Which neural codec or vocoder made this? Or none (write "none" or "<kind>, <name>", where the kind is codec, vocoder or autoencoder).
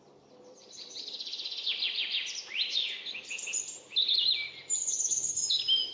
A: none